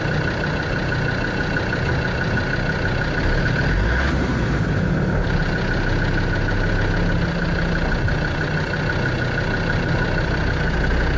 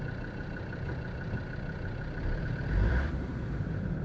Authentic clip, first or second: first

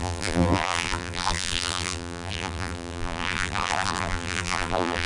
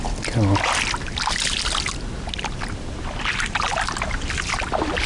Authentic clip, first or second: second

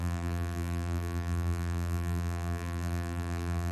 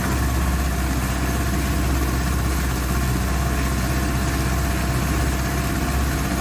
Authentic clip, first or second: second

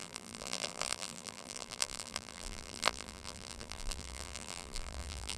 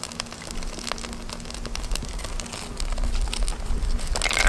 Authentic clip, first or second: second